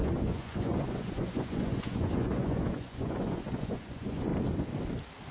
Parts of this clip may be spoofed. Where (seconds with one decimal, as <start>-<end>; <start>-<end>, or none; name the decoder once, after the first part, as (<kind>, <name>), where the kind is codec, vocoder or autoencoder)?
0.0-4.3 (vocoder, Vocos)